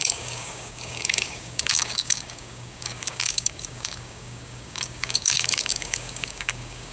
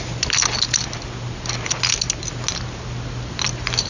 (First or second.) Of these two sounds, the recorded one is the second